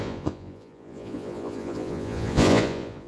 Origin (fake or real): fake